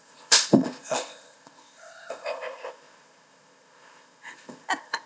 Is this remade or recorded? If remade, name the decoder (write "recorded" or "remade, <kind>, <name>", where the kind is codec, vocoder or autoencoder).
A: remade, codec, ZipCodec